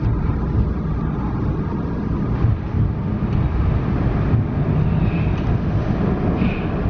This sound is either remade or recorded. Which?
recorded